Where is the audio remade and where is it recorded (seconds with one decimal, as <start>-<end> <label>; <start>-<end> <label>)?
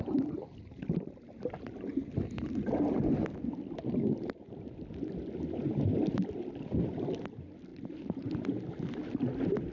0.0-9.7 recorded